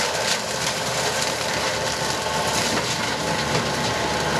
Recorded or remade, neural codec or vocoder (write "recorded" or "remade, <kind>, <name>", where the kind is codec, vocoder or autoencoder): recorded